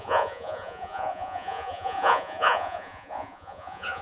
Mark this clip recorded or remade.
remade